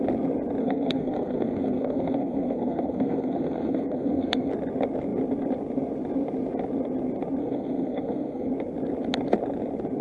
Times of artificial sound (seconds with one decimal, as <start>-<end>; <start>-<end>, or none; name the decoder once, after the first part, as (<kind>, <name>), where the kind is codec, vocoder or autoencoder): 0.6-4.5 (codec, SNAC); 7.4-8.5